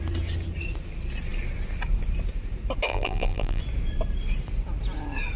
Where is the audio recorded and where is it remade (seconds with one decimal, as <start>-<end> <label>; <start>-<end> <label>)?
0.0-2.9 recorded; 2.9-3.6 remade; 3.6-5.4 recorded